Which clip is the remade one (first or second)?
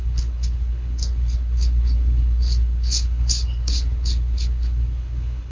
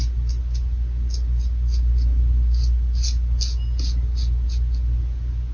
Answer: first